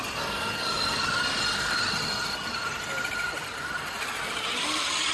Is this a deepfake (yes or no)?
no